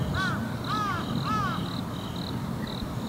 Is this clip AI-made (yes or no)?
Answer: no